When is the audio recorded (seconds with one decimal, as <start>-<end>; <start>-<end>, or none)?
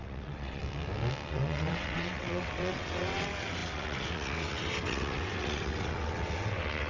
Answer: 0.6-1.3